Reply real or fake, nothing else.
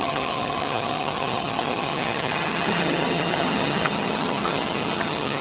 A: fake